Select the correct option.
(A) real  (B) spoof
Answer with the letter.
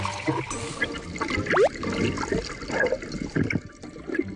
A